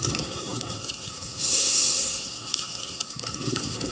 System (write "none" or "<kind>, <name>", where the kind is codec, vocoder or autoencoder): codec, SNAC